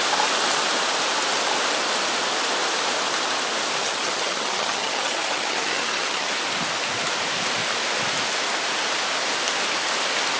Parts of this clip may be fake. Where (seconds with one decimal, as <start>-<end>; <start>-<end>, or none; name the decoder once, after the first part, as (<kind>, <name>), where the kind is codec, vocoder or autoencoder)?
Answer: 3.8-6.3 (vocoder, HiFi-GAN)